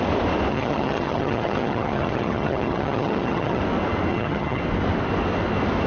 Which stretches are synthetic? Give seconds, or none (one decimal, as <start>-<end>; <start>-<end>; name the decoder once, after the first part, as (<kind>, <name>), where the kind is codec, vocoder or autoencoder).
0.5-3.6 (vocoder, HiFi-GAN); 4.1-4.6